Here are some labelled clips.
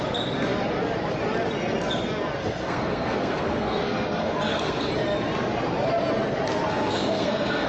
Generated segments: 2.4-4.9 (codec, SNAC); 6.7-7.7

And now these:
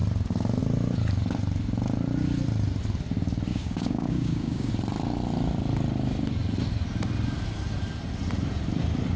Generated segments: 3.5-4.7 (codec, DAC)

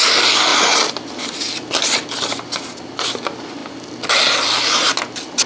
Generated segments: none

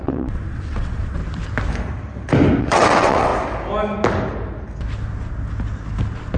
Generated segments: 0.0-1.2 (vocoder, WaveNeXt); 2.6-3.3

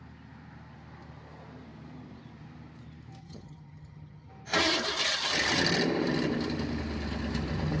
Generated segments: 3.2-4.3 (vocoder, HiFi-GAN)

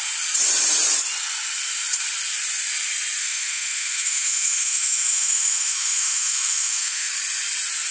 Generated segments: 3.2-7.1 (autoencoder, DAC-VAE)